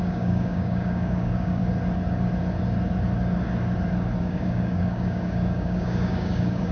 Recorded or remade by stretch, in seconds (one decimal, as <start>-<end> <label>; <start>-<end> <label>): 0.0-1.6 remade; 1.6-4.2 recorded; 4.2-6.7 remade